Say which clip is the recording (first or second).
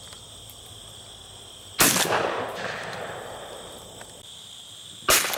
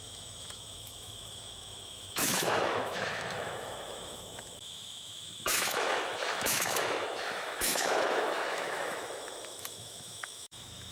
first